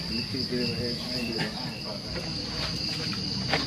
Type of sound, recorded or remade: recorded